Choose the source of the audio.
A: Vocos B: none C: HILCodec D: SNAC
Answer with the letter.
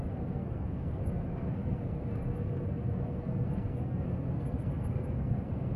D